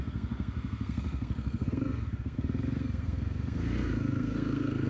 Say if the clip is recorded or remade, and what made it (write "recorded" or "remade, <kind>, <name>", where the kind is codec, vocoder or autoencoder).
remade, codec, SNAC